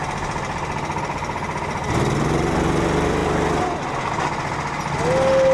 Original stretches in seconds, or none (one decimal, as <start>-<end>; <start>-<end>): 0.0-5.5